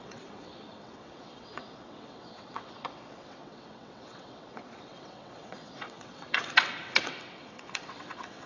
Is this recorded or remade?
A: remade